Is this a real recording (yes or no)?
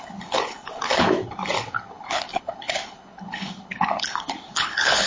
no